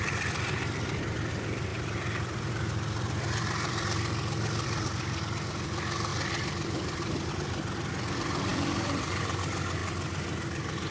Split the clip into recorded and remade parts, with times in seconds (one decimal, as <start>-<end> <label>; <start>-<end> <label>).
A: 0.0-1.7 recorded; 1.7-5.2 remade; 5.2-6.1 recorded; 6.1-7.3 remade; 7.3-8.5 recorded; 8.5-9.1 remade; 9.1-10.9 recorded